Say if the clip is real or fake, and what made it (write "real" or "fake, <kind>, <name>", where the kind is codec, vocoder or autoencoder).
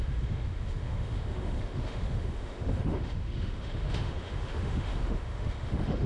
fake, autoencoder, DAC-VAE